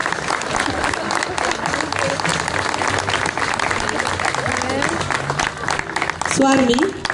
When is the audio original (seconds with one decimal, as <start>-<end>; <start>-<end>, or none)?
0.5-7.1